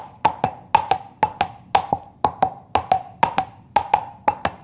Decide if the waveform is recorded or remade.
recorded